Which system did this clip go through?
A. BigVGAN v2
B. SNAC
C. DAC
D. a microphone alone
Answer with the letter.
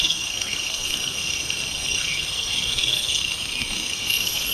B